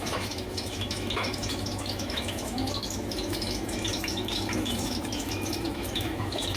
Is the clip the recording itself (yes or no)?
no